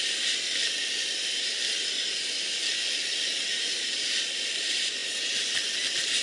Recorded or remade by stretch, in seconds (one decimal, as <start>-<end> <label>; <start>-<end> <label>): 0.0-6.2 recorded